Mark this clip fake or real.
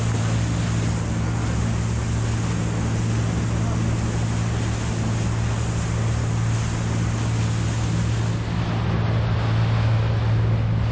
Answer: real